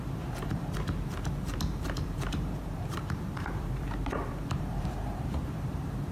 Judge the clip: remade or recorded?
remade